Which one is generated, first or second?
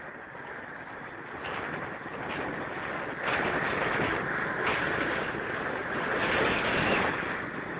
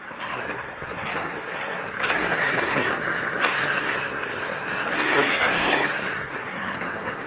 second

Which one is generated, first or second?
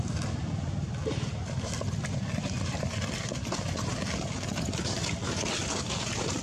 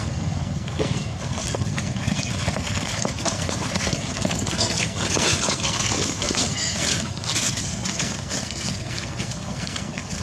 second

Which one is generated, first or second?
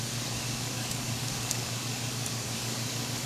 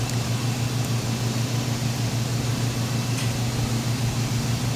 first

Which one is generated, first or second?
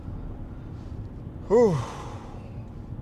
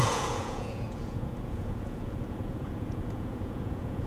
second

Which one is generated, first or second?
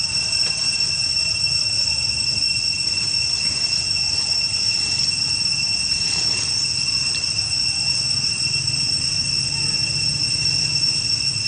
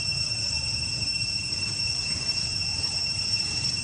second